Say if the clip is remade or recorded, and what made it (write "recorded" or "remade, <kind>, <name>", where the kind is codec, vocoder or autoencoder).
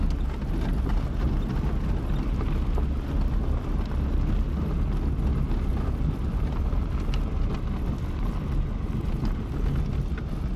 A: recorded